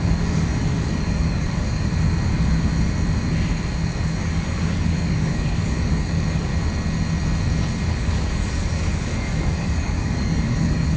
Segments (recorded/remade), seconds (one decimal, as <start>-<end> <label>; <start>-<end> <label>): 0.0-1.9 remade; 1.9-4.1 recorded; 4.1-6.5 remade; 6.5-7.9 recorded; 7.9-11.0 remade